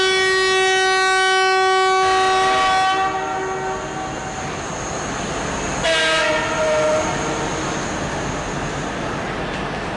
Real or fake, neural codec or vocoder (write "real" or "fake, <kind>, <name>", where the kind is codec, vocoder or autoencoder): real